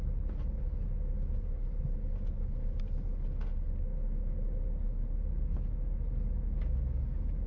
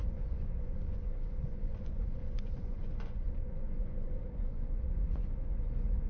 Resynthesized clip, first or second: second